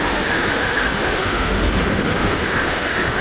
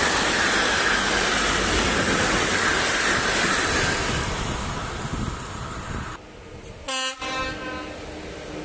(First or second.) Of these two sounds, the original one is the second